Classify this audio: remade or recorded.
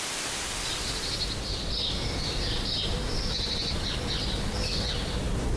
recorded